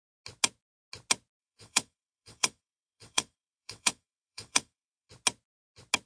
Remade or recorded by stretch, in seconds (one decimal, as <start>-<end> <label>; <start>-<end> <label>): 0.0-1.4 recorded; 1.4-5.1 remade; 5.1-6.1 recorded